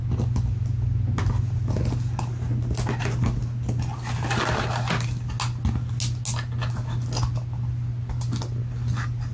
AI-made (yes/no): no